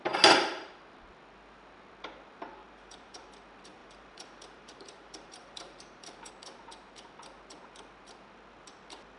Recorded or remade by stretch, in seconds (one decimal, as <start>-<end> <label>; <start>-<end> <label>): 0.0-2.6 recorded; 2.6-3.3 remade; 3.3-3.8 recorded; 3.8-6.3 remade; 6.3-9.2 recorded